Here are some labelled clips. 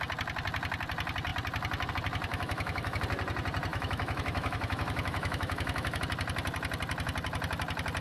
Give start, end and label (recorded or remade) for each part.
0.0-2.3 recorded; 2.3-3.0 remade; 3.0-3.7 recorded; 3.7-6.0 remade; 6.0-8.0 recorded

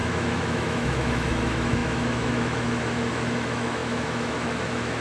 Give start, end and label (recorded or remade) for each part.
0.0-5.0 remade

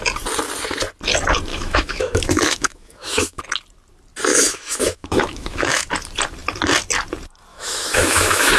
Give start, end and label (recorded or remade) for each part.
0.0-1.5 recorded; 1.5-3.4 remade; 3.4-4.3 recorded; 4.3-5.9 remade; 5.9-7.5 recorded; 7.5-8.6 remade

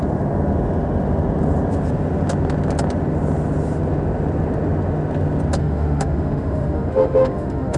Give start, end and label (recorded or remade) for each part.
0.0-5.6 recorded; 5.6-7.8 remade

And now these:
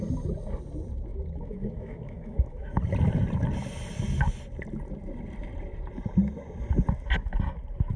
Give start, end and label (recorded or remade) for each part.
0.0-1.1 recorded; 1.1-2.8 remade; 2.8-8.0 recorded

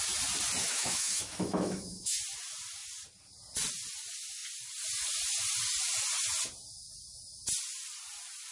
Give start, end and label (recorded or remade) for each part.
0.0-0.6 recorded; 0.6-2.2 remade; 2.2-8.5 recorded

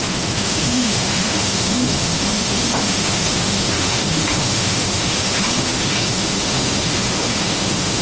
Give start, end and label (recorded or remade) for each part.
0.0-8.0 remade

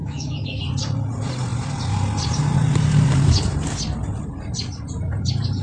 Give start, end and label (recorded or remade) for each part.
0.0-0.6 remade; 0.6-5.6 recorded